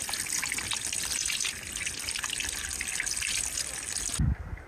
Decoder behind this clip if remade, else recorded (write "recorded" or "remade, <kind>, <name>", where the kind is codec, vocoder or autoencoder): recorded